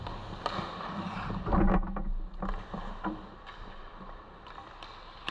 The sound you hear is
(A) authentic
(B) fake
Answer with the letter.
A